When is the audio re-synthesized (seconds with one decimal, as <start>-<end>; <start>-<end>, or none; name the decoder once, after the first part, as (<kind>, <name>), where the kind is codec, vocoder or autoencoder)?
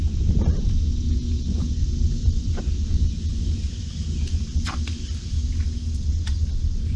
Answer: 0.9-2.6 (vocoder, BigVGAN v2); 3.3-5.6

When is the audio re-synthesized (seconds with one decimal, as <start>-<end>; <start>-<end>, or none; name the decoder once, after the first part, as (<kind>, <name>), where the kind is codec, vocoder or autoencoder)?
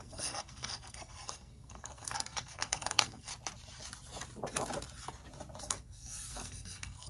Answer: 0.0-3.3 (codec, SNAC); 5.6-7.1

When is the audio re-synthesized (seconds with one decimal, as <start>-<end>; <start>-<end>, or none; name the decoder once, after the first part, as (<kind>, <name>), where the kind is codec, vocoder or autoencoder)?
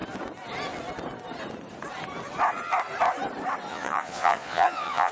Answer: 3.7-5.1 (vocoder, Vocos)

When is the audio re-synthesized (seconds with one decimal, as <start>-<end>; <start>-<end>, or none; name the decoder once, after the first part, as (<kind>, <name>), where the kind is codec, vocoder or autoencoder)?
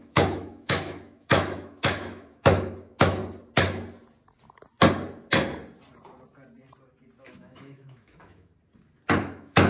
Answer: 0.0-3.2 (autoencoder, DAC-VAE); 7.2-8.5; 9.2-9.7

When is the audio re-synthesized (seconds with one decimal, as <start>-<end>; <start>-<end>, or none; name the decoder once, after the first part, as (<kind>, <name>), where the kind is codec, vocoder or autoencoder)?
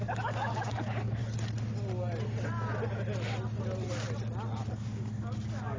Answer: 0.0-1.2 (codec, DAC); 4.7-5.8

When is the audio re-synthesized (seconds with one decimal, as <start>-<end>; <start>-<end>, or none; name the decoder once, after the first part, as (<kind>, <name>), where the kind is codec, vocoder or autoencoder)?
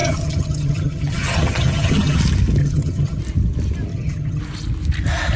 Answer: 0.0-2.2 (vocoder, HiFi-GAN); 2.6-3.2; 3.9-4.4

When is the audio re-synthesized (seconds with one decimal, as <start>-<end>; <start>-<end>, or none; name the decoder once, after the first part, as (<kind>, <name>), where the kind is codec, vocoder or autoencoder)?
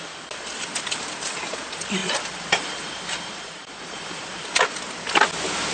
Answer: 2.0-4.3 (vocoder, BigVGAN v2)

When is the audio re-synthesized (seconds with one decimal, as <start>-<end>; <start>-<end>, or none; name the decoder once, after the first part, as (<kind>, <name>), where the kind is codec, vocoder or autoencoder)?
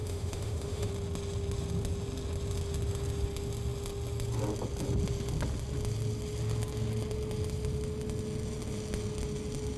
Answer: 0.0-0.9 (autoencoder, DAC-VAE)